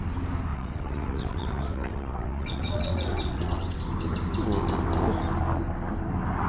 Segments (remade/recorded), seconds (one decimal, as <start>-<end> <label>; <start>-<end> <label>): 0.0-0.5 recorded; 0.5-3.8 remade; 3.8-6.5 recorded